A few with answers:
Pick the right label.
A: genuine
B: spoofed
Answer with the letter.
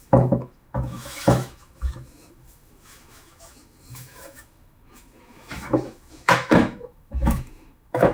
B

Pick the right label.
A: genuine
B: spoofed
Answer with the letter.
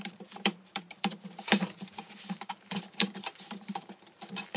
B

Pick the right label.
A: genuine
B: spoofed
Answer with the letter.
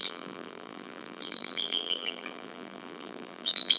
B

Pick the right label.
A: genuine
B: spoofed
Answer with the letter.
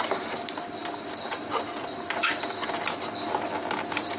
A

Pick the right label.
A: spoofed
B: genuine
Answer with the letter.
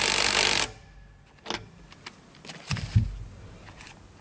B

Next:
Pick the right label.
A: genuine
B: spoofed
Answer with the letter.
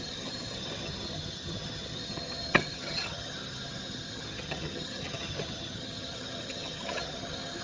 B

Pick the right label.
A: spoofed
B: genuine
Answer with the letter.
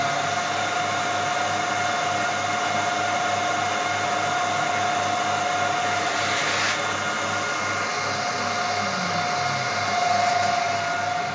B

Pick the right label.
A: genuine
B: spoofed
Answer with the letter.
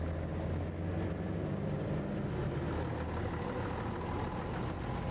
A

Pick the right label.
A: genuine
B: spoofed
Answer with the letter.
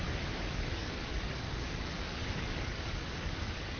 B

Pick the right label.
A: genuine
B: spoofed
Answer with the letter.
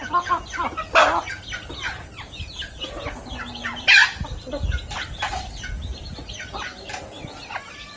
A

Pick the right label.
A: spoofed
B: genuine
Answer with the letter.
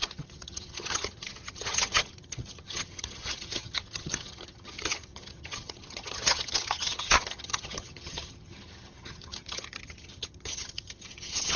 A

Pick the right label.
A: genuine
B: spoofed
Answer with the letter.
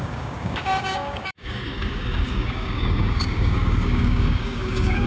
B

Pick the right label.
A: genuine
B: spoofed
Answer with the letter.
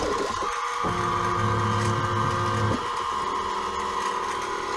A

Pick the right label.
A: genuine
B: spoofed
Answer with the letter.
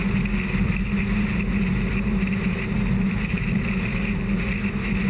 A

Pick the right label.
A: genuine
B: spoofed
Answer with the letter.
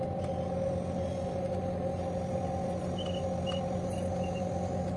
A